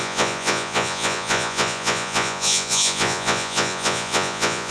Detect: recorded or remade remade